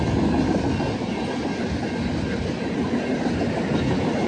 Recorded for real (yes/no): yes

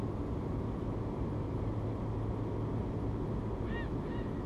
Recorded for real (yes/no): yes